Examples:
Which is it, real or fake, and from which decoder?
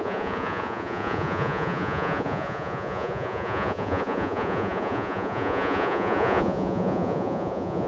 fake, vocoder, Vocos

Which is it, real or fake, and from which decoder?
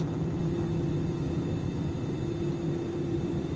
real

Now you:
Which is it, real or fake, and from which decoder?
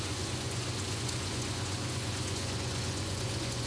fake, vocoder, Vocos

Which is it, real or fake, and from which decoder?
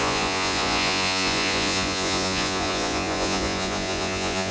fake, vocoder, Vocos